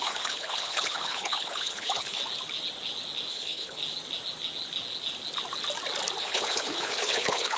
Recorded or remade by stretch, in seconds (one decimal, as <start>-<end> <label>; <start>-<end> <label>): 0.0-2.2 remade; 2.2-3.3 recorded; 3.3-3.8 remade; 3.8-6.2 recorded; 6.2-7.6 remade